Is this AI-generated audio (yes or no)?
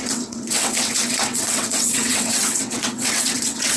yes